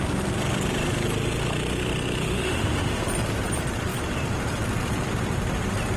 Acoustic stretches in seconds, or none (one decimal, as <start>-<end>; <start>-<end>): 0.0-2.2; 3.0-6.0